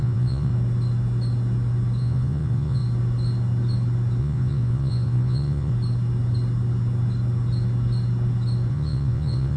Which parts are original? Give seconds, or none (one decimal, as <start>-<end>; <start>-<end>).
0.5-2.0; 2.8-4.2; 5.7-8.7